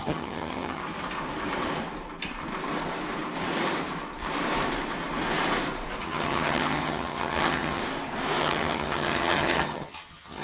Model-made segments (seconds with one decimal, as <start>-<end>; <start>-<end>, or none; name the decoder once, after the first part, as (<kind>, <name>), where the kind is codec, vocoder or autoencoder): 0.0-0.8 (vocoder, HiFi-GAN); 6.0-7.8; 8.4-10.4